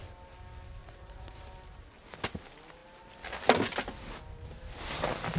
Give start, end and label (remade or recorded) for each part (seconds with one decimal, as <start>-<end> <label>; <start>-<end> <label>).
0.0-0.8 recorded; 0.8-1.4 remade; 1.4-5.4 recorded